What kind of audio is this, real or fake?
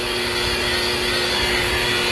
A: real